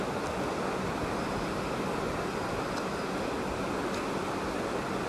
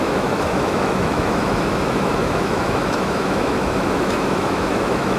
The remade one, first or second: second